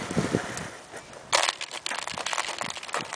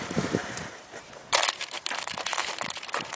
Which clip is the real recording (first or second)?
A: first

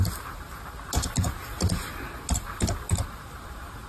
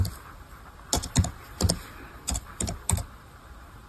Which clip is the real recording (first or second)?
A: first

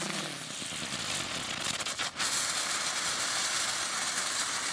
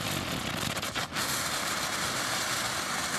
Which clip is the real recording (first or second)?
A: first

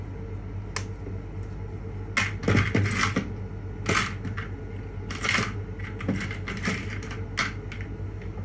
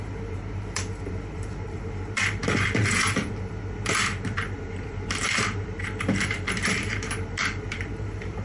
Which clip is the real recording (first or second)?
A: first